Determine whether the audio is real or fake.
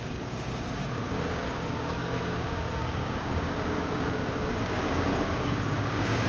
fake